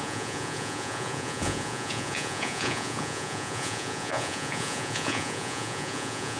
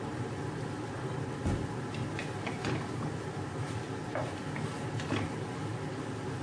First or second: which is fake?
first